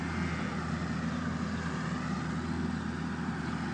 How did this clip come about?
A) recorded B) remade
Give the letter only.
A